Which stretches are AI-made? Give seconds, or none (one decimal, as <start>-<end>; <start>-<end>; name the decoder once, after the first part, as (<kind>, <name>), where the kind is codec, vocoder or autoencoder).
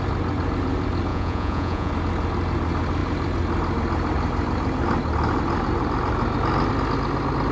1.1-1.9 (vocoder, Vocos)